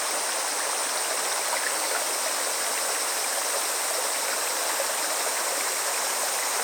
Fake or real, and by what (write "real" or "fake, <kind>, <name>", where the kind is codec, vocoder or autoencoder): real